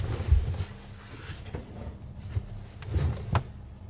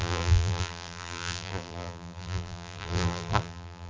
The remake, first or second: second